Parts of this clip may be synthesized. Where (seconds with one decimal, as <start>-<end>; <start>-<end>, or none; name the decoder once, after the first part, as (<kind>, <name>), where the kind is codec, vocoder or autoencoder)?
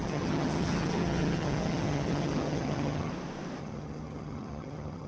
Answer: 0.0-3.1 (vocoder, HiFi-GAN); 3.6-5.1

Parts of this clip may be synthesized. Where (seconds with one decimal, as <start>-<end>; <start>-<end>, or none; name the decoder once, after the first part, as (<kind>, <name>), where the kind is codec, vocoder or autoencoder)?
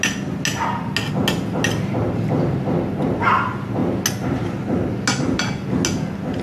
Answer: none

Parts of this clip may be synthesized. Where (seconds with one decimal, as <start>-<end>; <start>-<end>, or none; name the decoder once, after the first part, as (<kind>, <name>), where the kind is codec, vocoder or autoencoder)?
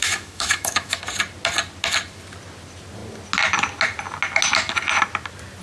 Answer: 0.0-1.0 (autoencoder, DAC-VAE)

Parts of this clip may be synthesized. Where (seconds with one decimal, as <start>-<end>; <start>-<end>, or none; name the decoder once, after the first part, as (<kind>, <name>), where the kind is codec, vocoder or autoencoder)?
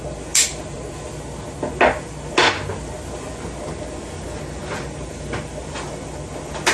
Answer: 0.5-1.1 (vocoder, BigVGAN v2)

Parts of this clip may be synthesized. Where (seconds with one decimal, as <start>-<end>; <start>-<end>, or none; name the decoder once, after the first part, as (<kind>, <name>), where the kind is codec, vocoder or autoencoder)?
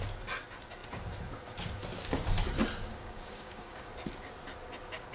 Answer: 2.9-3.9 (codec, DAC)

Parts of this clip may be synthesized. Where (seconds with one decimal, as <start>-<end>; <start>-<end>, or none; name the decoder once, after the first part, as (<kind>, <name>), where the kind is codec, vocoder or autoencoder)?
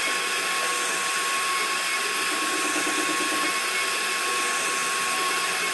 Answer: none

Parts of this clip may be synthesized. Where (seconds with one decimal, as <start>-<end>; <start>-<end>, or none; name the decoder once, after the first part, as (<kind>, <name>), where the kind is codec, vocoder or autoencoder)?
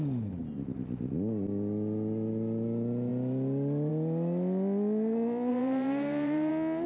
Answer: 5.5-6.5 (vocoder, BigVGAN v2)